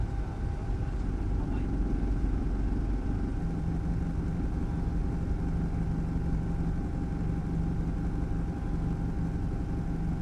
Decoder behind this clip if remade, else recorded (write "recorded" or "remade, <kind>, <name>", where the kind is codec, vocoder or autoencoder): recorded